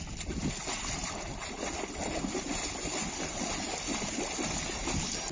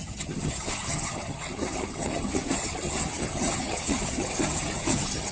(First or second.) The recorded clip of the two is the first